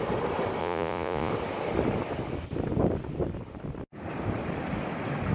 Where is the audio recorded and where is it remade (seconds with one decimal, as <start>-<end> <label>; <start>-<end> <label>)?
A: 0.0-0.6 recorded; 0.6-1.3 remade; 1.3-5.3 recorded